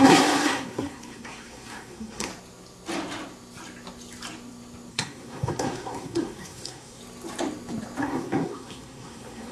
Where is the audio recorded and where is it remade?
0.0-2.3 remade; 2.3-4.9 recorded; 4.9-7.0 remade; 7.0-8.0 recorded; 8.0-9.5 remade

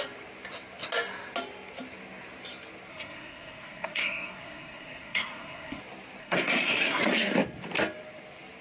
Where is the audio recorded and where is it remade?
0.0-2.9 recorded; 2.9-5.8 remade; 5.8-6.2 recorded; 6.2-7.0 remade; 7.0-8.6 recorded

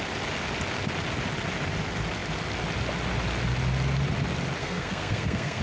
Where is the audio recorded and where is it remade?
0.0-4.6 recorded; 4.6-5.6 remade

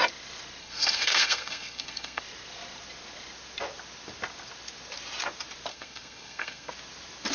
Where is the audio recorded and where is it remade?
0.0-0.6 recorded; 0.6-2.2 remade; 2.2-5.7 recorded; 5.7-6.7 remade; 6.7-7.3 recorded

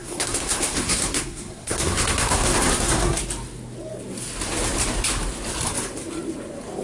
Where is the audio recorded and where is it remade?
0.0-3.2 remade; 3.2-6.8 recorded

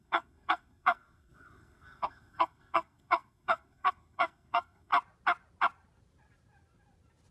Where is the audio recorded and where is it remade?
0.0-4.9 remade; 4.9-7.3 recorded

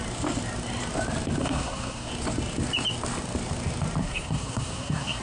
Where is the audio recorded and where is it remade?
0.0-1.4 recorded; 1.4-2.1 remade; 2.1-4.0 recorded; 4.0-5.2 remade